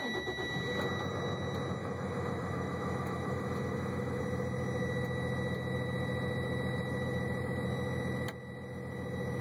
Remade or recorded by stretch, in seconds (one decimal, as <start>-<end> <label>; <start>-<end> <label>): 0.0-1.8 recorded; 1.8-4.2 remade; 4.2-9.4 recorded